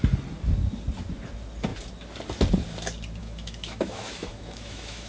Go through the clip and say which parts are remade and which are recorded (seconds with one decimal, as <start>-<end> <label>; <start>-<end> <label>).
0.0-3.2 recorded; 3.2-5.1 remade